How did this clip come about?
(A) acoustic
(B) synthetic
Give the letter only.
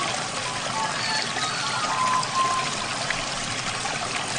A